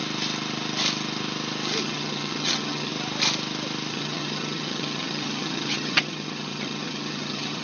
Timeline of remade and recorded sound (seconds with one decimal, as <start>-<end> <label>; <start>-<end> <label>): 0.0-1.8 recorded; 1.8-2.9 remade; 2.9-3.9 recorded; 3.9-7.6 remade